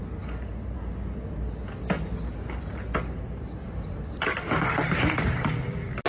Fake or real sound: real